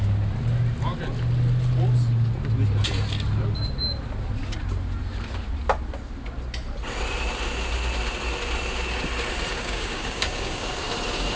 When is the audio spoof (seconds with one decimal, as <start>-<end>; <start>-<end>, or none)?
9.5-10.7